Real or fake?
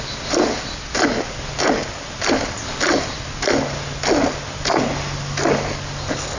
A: real